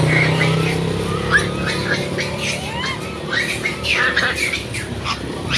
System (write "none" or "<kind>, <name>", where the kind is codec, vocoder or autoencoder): none